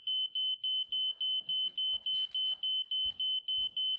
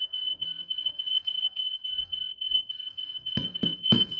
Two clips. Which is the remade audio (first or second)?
second